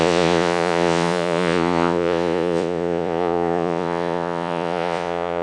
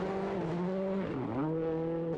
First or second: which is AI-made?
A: first